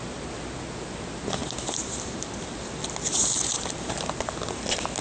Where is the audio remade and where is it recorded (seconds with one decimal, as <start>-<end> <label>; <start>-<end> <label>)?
0.0-5.0 recorded